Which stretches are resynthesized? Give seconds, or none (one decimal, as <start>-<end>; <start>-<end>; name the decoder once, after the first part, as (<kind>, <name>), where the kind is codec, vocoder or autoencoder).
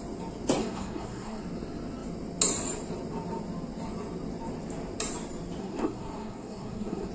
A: 0.6-1.4 (codec, SNAC); 5.6-7.1